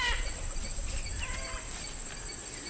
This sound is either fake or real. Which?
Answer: real